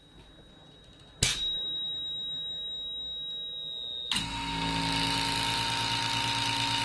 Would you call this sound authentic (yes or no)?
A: yes